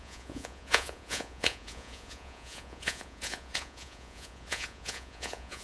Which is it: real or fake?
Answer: fake